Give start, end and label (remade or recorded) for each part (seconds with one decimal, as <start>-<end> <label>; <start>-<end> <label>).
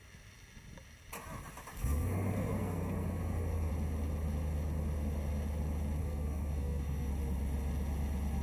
0.0-1.7 recorded; 1.7-3.7 remade; 3.7-6.0 recorded; 6.0-7.1 remade; 7.1-8.4 recorded